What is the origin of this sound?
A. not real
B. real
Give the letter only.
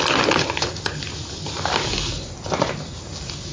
B